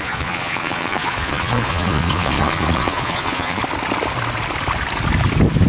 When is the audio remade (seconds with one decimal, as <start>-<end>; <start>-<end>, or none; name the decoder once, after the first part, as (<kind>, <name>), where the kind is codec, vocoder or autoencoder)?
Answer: 0.0-3.6 (vocoder, Vocos)

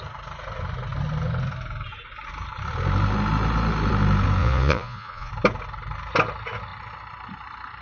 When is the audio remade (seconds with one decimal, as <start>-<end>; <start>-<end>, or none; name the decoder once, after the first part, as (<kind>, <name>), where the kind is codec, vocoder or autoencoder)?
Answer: 4.4-5.3 (vocoder, Vocos)

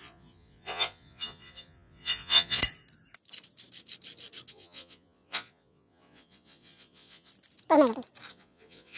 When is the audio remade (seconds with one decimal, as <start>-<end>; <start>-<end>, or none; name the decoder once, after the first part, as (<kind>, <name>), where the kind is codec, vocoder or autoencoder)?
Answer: 0.0-2.6 (vocoder, Vocos); 4.5-7.3; 8.3-9.0

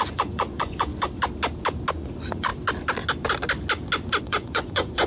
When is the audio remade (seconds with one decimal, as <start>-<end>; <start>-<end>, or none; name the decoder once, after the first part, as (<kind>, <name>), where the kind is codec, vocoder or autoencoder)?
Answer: 0.0-0.9 (vocoder, Vocos); 1.9-2.5; 4.2-5.1

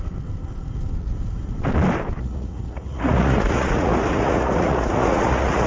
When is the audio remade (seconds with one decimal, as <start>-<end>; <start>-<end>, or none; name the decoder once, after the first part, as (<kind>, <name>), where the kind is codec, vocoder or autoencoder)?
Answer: 2.2-5.7 (vocoder, Vocos)